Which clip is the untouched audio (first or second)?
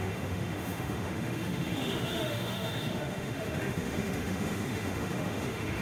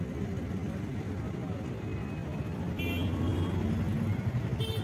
second